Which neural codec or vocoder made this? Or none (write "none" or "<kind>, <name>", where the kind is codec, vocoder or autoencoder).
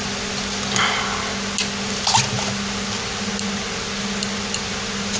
none